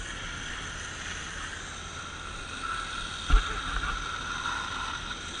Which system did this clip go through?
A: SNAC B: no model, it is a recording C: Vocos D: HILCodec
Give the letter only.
B